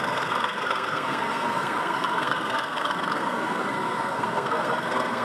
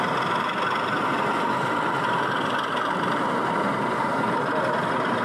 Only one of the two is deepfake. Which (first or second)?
first